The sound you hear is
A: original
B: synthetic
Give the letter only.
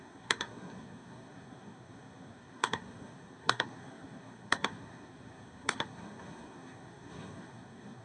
B